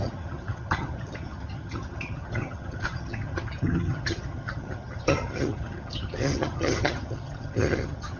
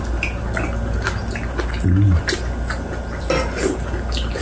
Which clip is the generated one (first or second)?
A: first